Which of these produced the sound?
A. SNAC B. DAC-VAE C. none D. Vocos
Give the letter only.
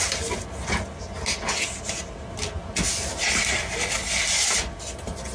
C